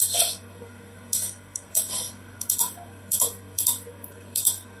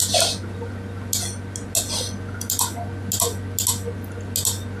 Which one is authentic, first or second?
second